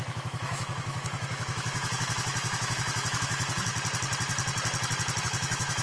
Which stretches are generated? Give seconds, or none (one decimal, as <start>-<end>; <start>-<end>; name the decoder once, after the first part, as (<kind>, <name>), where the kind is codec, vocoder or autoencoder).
0.0-3.7 (autoencoder, DAC-VAE); 5.2-5.8